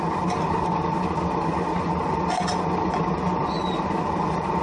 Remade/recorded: recorded